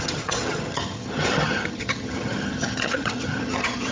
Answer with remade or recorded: remade